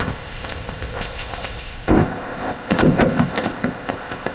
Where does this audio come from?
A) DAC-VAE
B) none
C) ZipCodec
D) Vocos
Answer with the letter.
C